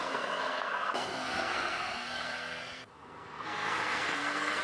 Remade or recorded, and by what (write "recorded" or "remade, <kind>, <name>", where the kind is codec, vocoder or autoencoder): remade, codec, SNAC